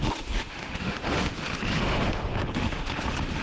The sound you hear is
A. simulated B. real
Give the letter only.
A